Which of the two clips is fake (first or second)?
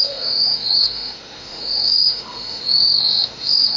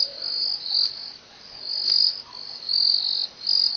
first